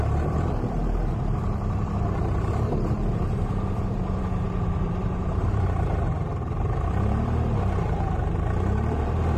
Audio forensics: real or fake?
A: fake